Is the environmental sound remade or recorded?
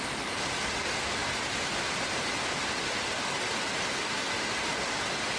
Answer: recorded